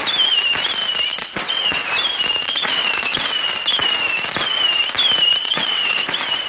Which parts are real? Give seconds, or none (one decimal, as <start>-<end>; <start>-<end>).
0.0-1.1; 1.9-2.4; 3.3-5.4; 6.1-6.5